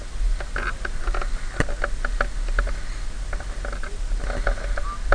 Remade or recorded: recorded